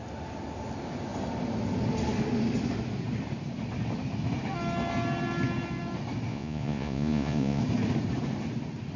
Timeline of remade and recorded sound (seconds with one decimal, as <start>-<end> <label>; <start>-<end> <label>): 0.0-6.3 recorded; 6.3-7.6 remade; 7.6-9.0 recorded